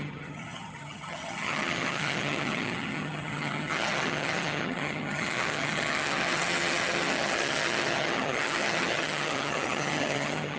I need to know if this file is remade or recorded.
remade